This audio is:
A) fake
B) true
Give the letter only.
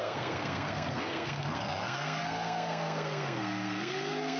A